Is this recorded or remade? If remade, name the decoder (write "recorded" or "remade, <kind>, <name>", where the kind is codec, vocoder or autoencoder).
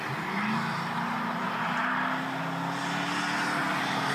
recorded